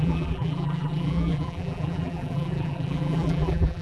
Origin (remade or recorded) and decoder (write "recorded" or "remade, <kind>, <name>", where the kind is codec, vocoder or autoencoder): remade, vocoder, BigVGAN v2